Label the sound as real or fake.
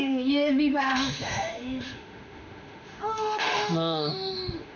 fake